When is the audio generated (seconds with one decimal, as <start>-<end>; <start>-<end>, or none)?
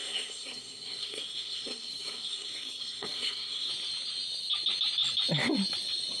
0.0-3.7